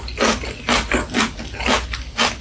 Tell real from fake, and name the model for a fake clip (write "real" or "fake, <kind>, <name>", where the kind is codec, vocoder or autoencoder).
real